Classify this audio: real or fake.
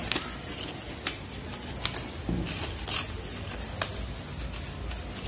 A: real